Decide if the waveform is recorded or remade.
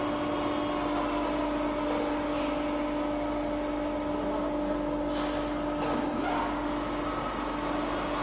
recorded